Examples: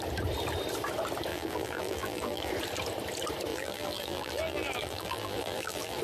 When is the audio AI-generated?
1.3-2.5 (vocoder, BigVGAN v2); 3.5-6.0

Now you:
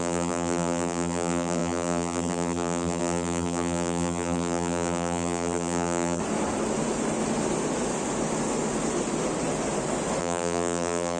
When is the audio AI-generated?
0.0-6.2 (vocoder, BigVGAN v2); 10.2-11.2

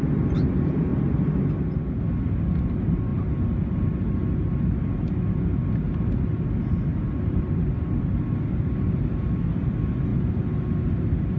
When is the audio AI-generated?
0.0-0.9 (vocoder, BigVGAN v2); 2.0-3.1; 7.4-11.4

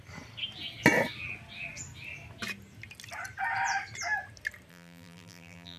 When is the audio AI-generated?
4.7-5.8 (vocoder, BigVGAN v2)

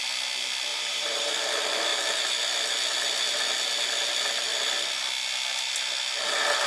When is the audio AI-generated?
0.7-1.3 (vocoder, BigVGAN v2)